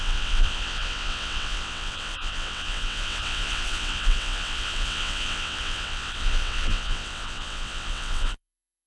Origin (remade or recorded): remade